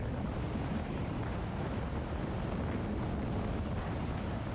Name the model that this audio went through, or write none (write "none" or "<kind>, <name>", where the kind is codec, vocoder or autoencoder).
none